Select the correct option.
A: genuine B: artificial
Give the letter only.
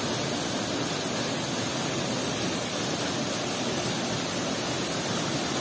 A